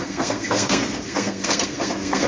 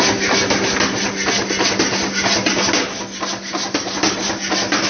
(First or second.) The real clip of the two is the second